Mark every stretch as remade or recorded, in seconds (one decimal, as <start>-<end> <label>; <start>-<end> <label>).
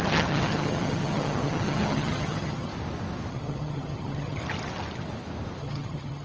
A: 0.0-2.7 remade; 2.7-3.3 recorded; 3.3-4.4 remade; 4.4-5.6 recorded; 5.6-6.2 remade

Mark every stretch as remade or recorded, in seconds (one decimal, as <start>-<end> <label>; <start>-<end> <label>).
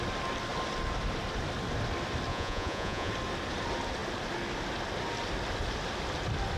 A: 0.0-2.3 recorded; 2.3-3.1 remade; 3.1-6.6 recorded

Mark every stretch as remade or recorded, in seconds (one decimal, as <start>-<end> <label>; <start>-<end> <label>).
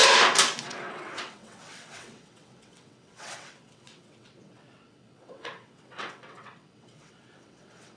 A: 0.0-0.6 recorded; 0.6-8.0 remade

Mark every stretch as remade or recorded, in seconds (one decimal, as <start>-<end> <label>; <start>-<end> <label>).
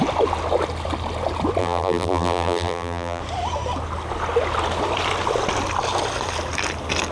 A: 0.0-1.6 recorded; 1.6-3.2 remade; 3.2-7.1 recorded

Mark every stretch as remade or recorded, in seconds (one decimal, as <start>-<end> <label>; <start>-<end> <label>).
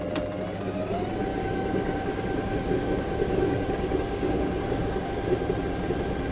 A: 0.0-1.3 recorded; 1.3-5.1 remade; 5.1-6.3 recorded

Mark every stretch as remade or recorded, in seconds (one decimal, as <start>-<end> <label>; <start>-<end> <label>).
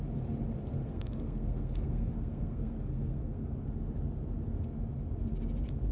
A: 0.0-0.8 recorded; 0.8-3.7 remade; 3.7-5.9 recorded